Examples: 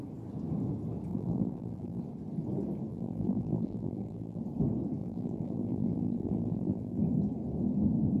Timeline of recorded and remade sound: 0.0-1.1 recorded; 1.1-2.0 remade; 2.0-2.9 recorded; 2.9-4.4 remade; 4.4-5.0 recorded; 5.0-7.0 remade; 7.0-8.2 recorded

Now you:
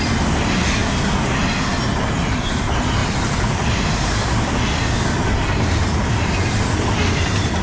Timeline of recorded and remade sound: 0.0-0.8 remade; 0.8-2.6 recorded; 2.6-7.6 remade

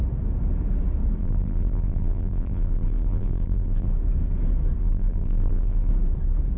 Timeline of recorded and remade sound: 0.0-1.2 recorded; 1.2-3.9 remade; 3.9-4.8 recorded; 4.8-5.9 remade; 5.9-6.6 recorded

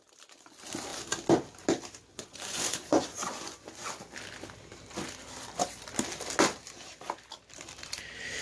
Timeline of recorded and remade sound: 0.0-2.1 recorded; 2.1-3.9 remade; 3.9-8.4 recorded

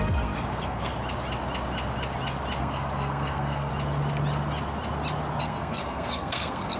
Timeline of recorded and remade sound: 0.0-0.9 remade; 0.9-2.6 recorded; 2.6-3.7 remade; 3.7-5.4 recorded; 5.4-6.8 remade

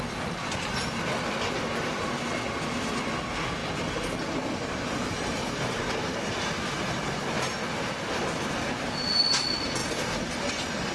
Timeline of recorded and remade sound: 0.0-10.9 recorded

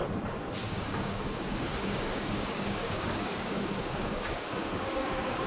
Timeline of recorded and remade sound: 0.0-0.6 recorded; 0.6-5.5 remade

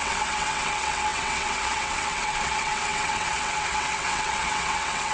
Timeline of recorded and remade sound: 0.0-5.1 remade